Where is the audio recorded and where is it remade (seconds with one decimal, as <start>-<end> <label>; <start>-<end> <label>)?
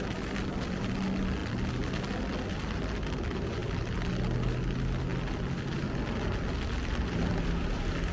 0.0-8.1 recorded